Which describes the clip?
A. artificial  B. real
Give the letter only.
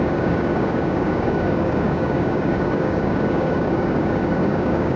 A